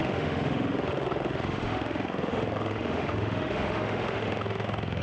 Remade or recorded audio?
remade